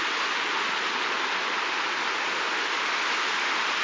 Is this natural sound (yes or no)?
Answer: yes